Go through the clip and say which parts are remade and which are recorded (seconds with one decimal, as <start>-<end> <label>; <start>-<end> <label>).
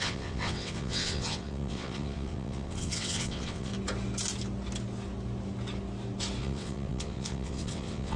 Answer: 0.0-3.7 remade; 3.7-6.4 recorded; 6.4-8.2 remade